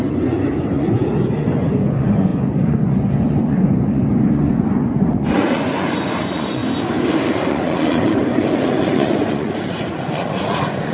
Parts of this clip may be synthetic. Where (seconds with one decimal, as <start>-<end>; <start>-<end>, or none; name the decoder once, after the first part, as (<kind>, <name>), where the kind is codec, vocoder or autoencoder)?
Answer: 0.0-6.6 (vocoder, Vocos); 7.2-10.9